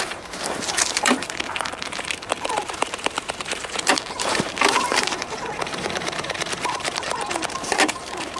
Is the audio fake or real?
fake